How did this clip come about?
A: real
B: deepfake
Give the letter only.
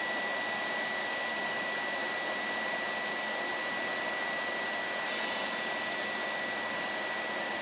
A